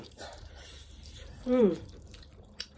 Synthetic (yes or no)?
yes